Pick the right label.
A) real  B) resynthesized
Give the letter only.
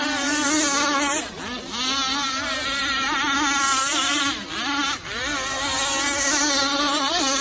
A